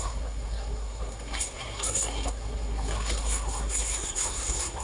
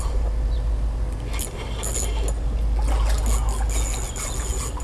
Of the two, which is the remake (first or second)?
first